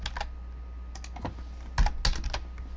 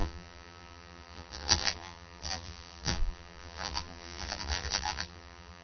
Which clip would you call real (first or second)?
first